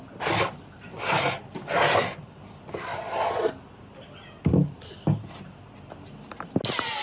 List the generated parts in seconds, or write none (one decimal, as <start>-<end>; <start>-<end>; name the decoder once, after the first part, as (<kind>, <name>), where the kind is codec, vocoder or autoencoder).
none